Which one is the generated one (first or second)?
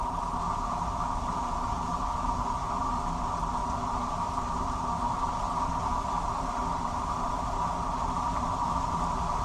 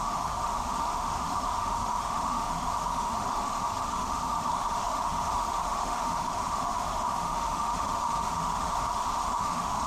second